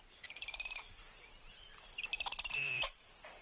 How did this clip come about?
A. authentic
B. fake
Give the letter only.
B